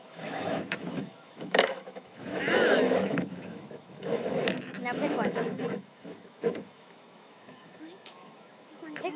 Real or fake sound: fake